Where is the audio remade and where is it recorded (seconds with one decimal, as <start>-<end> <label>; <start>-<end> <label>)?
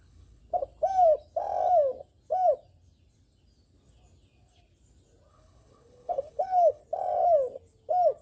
0.0-0.4 remade; 0.4-5.3 recorded; 5.3-6.8 remade; 6.8-8.2 recorded